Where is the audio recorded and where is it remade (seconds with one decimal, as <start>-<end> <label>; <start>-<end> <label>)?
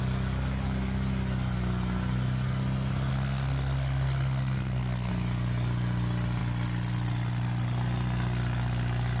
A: 0.0-3.1 recorded; 3.1-5.1 remade; 5.1-9.2 recorded